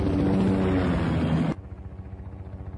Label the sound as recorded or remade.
recorded